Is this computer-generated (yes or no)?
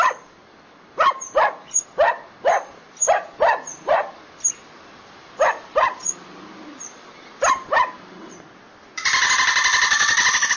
no